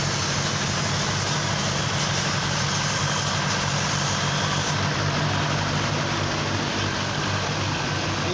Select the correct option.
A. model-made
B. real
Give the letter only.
B